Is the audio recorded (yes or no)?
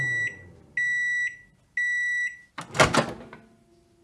yes